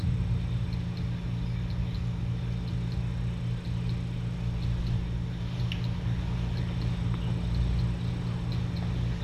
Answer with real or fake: real